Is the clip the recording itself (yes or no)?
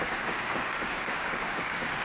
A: no